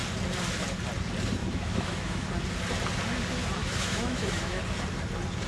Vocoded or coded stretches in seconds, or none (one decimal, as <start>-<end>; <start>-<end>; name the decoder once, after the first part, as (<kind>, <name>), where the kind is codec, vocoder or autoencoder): 1.4-2.3 (autoencoder, DAC-VAE); 3.6-4.6